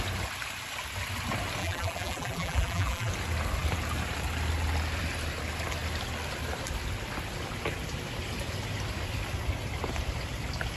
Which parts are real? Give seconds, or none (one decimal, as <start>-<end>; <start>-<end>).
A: 0.0-1.6; 3.1-10.8